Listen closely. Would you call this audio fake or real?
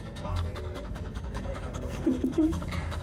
fake